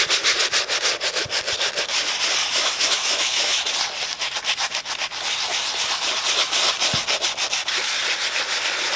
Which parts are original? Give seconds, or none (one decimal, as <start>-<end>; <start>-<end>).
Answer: 0.0-2.4; 3.7-9.0